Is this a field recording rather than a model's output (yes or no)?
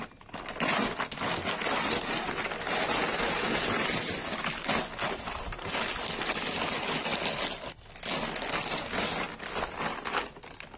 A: yes